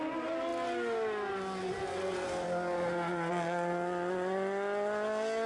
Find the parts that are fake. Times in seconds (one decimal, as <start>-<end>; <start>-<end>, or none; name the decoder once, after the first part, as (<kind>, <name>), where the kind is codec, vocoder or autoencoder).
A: none